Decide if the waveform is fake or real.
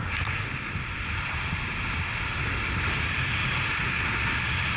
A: real